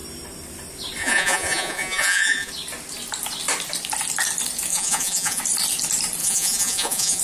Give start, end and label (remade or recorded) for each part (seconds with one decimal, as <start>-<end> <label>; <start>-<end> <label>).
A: 0.0-1.0 recorded; 1.0-2.5 remade; 2.5-4.7 recorded; 4.7-5.4 remade; 5.4-6.2 recorded; 6.2-7.2 remade